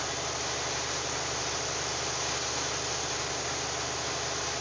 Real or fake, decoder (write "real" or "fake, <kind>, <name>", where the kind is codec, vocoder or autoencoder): real